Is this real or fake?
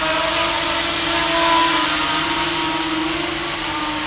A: real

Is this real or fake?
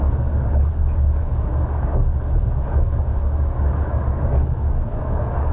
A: fake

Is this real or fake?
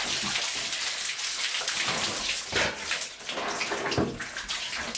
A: real